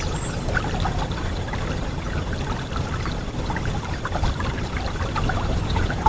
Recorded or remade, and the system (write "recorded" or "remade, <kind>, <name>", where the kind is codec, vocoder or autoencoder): recorded